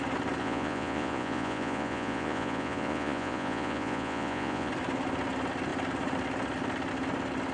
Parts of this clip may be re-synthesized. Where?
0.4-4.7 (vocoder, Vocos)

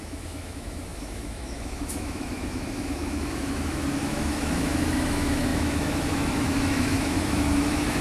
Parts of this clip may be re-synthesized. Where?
0.0-8.0 (autoencoder, DAC-VAE)

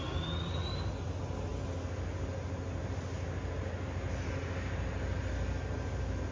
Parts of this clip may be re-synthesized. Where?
none

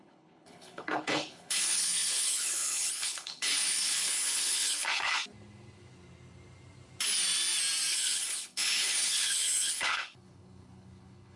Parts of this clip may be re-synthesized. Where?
0.0-5.2 (codec, HILCodec); 7.9-11.4

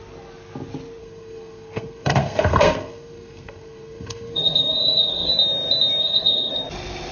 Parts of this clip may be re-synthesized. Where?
1.0-5.3 (codec, SNAC); 6.0-6.5